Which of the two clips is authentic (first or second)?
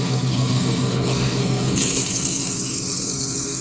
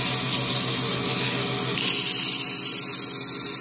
second